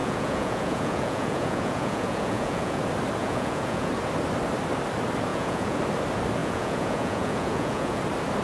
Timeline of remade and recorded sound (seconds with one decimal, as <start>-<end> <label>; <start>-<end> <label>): 0.0-2.8 remade; 2.8-3.2 recorded; 3.2-3.9 remade; 3.9-5.3 recorded; 5.3-5.8 remade; 5.8-6.4 recorded; 6.4-8.0 remade; 8.0-8.4 recorded